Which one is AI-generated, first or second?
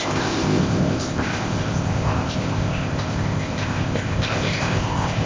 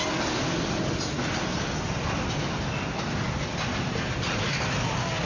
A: first